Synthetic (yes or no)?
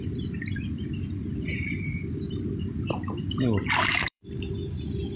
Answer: yes